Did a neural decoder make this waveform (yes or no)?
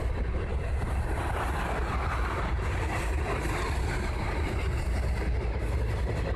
no